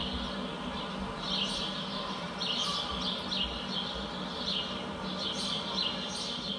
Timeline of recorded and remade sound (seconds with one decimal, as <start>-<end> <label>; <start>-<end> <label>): 0.0-6.6 recorded